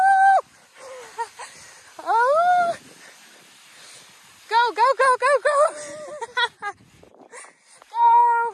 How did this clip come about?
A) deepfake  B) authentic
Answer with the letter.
B